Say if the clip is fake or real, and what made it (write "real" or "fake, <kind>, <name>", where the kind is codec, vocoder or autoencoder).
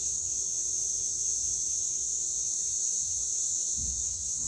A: fake, vocoder, WaveNeXt